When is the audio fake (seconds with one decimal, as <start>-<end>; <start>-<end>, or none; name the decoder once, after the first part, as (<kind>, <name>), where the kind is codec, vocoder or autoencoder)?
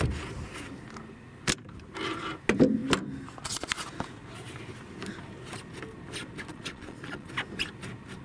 6.5-7.3 (vocoder, Vocos)